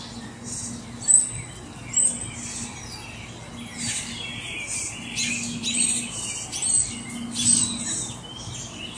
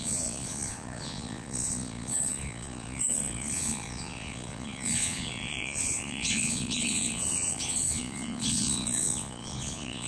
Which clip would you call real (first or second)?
first